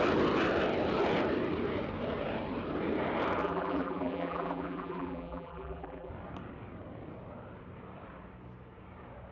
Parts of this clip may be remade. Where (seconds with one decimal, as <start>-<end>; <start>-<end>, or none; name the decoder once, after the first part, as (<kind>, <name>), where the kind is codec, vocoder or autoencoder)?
3.4-6.1 (vocoder, BigVGAN v2)

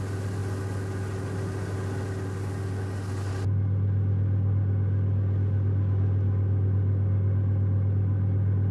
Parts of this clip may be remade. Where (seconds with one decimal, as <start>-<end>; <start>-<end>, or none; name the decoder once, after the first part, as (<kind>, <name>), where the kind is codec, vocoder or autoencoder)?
none